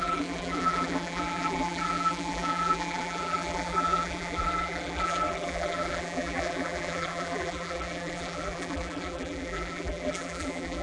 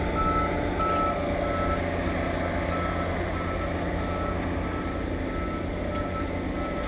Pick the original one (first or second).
second